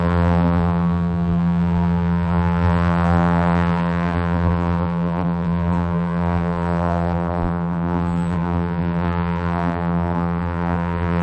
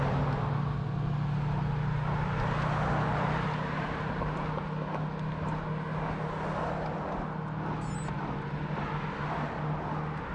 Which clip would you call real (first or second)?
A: second